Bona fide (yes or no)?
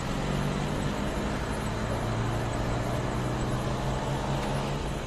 yes